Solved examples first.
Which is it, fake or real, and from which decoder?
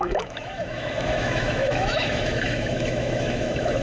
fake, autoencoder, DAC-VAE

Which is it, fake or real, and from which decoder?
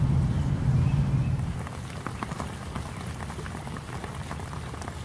real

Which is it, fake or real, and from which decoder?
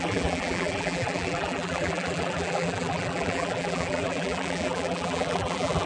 fake, vocoder, BigVGAN v2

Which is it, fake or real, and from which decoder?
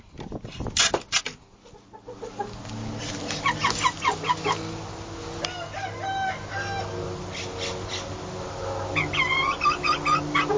real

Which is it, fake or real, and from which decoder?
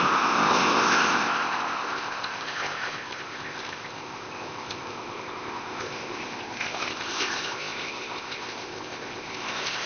fake, codec, ZipCodec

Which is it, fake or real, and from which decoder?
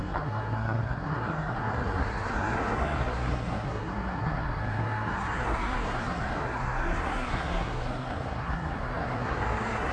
fake, codec, SNAC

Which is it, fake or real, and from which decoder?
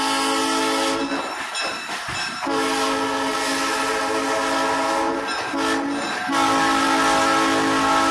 real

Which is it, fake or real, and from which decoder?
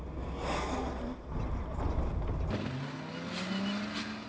real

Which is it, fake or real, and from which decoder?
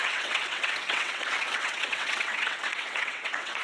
fake, vocoder, WaveNeXt